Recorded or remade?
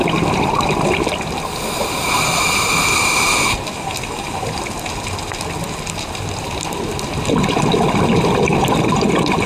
recorded